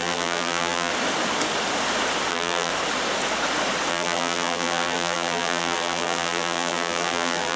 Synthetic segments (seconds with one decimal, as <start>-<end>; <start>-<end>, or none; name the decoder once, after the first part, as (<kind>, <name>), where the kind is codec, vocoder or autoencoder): 0.0-0.9 (vocoder, BigVGAN v2); 2.3-2.7; 3.9-7.6

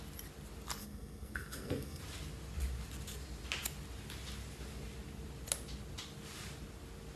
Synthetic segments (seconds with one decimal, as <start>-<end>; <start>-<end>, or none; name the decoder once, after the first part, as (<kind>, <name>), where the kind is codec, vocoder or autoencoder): 0.8-2.0 (codec, SNAC)

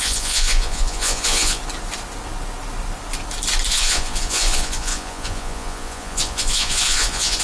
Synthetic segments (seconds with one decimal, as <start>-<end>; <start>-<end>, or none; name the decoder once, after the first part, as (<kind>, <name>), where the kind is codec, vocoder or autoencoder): 0.0-1.6 (vocoder, Vocos); 3.7-7.4

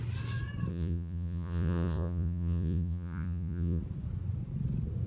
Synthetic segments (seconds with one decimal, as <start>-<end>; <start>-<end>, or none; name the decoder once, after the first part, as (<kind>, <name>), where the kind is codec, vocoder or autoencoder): 0.7-3.8 (vocoder, Vocos)

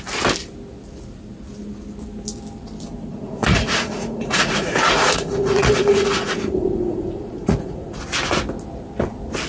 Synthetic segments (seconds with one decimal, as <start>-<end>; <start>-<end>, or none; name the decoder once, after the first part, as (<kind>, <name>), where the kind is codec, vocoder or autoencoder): 3.1-8.0 (vocoder, Vocos)

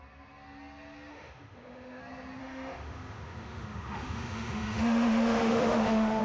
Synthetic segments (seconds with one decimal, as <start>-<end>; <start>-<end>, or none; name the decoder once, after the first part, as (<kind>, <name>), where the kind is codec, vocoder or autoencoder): 1.1-2.0 (autoencoder, DAC-VAE); 2.4-6.2